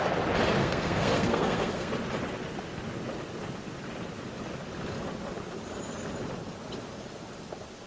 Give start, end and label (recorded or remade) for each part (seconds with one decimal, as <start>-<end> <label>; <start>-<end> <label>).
0.0-0.6 recorded; 0.6-1.9 remade; 1.9-7.9 recorded